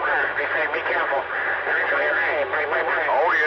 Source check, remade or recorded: recorded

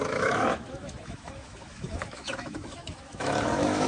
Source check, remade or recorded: remade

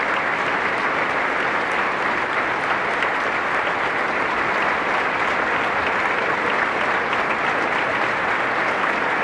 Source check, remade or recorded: recorded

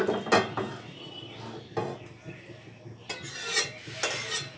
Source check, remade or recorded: recorded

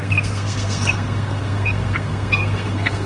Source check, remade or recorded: remade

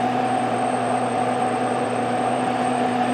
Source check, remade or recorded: remade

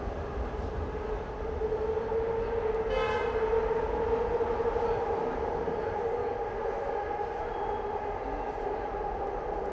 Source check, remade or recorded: recorded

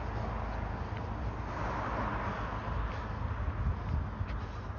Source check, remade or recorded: recorded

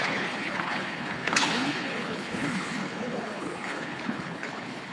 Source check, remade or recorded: remade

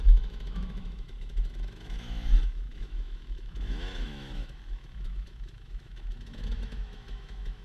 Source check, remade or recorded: remade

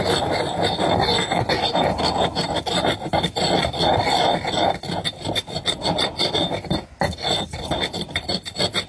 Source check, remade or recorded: recorded